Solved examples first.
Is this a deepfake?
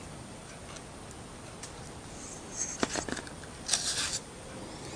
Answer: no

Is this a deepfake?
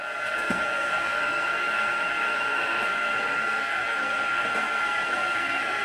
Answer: yes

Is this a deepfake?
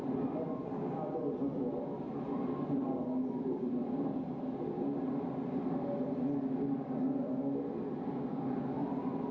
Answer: no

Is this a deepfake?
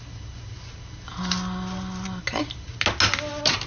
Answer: no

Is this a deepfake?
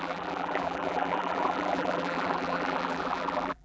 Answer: yes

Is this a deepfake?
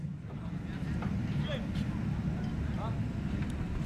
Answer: no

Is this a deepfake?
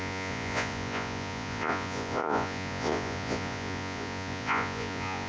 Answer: yes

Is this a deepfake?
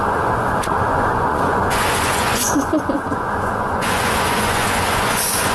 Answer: yes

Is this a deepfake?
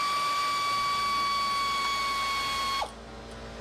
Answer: no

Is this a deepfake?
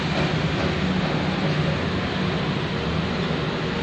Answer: no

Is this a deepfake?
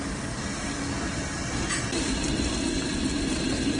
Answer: no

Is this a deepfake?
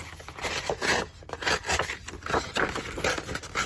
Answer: no